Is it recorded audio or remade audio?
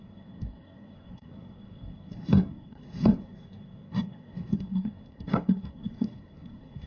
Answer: remade